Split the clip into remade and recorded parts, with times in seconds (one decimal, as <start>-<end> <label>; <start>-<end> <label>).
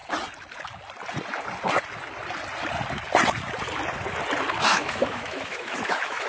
0.0-4.7 recorded; 4.7-6.3 remade